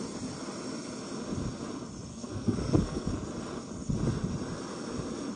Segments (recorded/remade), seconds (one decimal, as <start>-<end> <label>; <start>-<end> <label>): 0.0-2.1 recorded; 2.1-3.1 remade; 3.1-5.4 recorded